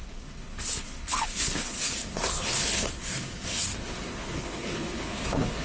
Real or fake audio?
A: fake